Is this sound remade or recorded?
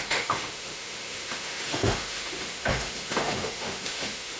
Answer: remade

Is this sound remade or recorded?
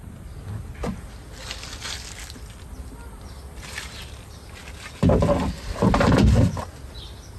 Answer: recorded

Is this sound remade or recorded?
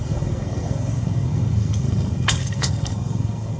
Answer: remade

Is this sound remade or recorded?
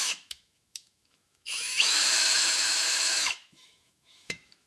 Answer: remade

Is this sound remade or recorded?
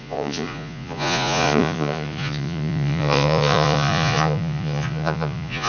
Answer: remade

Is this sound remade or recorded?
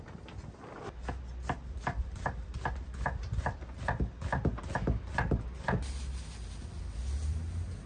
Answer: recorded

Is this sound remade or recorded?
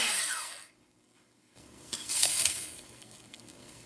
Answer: remade